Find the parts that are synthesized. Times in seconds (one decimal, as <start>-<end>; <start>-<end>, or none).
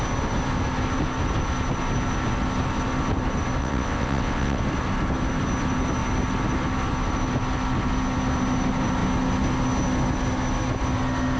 3.6-4.6